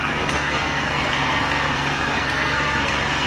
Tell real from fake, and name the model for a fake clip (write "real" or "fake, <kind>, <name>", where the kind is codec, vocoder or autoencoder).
fake, codec, SNAC